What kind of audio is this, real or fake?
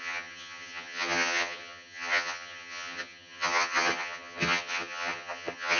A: fake